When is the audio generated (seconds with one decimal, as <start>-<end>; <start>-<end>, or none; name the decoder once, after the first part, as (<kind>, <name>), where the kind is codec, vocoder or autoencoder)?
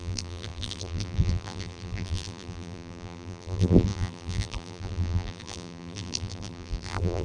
0.0-7.2 (vocoder, BigVGAN v2)